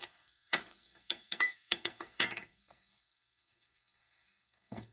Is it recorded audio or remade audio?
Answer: remade